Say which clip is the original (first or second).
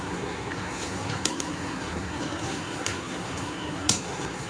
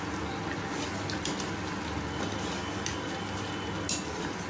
second